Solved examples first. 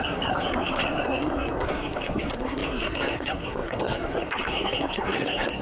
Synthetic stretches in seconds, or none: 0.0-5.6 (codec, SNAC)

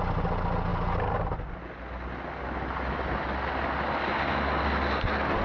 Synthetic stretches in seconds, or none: none

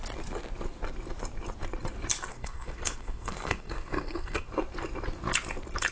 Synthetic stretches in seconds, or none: 2.3-4.5 (codec, SNAC)

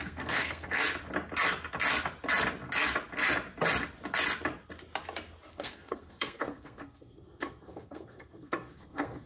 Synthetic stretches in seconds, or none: 0.0-0.8 (codec, SNAC); 5.5-9.3

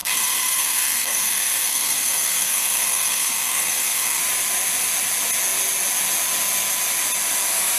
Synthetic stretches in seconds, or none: 0.0-4.2 (codec, SNAC)

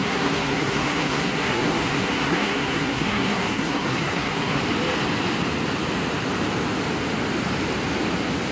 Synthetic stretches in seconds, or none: 0.0-4.6 (codec, SNAC)